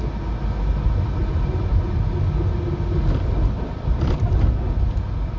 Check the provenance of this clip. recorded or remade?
recorded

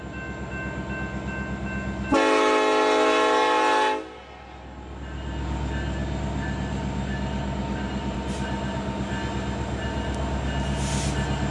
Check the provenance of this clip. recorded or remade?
recorded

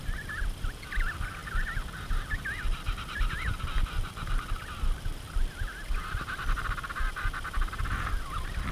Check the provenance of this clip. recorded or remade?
remade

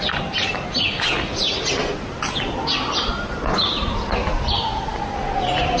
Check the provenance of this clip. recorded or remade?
recorded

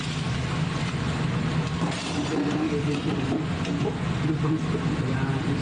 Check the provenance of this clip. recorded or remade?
recorded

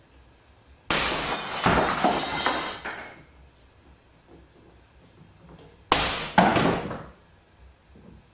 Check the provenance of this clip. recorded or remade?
recorded